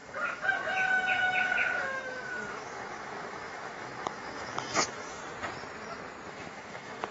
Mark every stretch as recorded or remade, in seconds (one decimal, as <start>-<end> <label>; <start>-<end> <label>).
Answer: 0.0-5.2 remade; 5.2-6.3 recorded; 6.3-7.1 remade